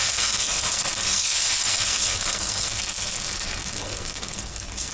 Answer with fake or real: fake